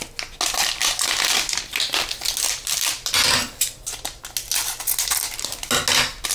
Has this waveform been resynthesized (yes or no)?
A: no